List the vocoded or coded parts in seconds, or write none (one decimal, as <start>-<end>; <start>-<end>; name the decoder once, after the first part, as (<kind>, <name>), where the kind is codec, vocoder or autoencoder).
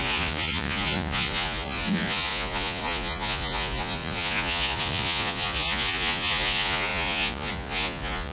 0.0-8.3 (vocoder, Vocos)